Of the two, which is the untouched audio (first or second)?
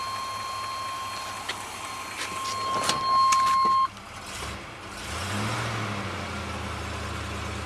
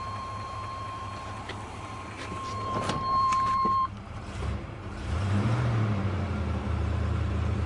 first